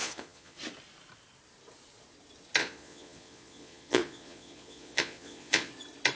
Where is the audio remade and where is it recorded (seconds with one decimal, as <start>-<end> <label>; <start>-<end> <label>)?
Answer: 0.0-0.6 remade; 0.6-2.6 recorded; 2.6-5.7 remade; 5.7-6.2 recorded